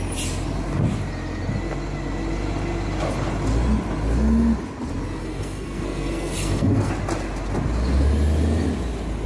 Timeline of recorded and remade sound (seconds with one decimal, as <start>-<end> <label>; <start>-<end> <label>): 0.0-5.2 recorded; 5.2-6.9 remade; 6.9-9.3 recorded

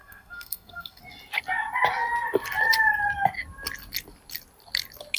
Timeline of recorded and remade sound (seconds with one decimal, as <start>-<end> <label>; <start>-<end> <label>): 0.0-1.0 remade; 1.0-5.2 recorded

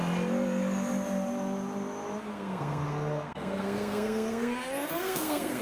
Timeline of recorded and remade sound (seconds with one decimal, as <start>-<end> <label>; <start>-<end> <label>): 0.0-2.3 recorded; 2.3-5.6 remade

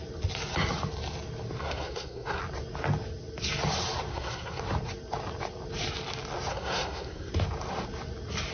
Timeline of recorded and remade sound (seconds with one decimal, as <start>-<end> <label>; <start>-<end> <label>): 0.0-1.6 recorded; 1.6-2.4 remade; 2.4-4.1 recorded; 4.1-4.6 remade; 4.6-6.5 recorded; 6.5-7.3 remade; 7.3-8.5 recorded

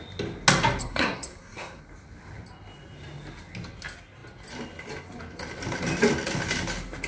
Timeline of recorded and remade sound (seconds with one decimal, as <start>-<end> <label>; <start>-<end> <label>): 0.0-0.8 recorded; 0.8-1.8 remade; 1.8-7.1 recorded

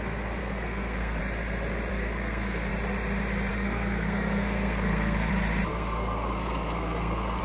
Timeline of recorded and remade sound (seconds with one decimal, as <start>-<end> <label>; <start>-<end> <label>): 0.0-0.4 recorded; 0.4-1.2 remade; 1.2-1.9 recorded; 1.9-2.7 remade; 2.7-3.5 recorded; 3.5-5.3 remade; 5.3-5.7 recorded; 5.7-7.4 remade